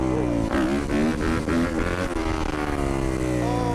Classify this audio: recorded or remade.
recorded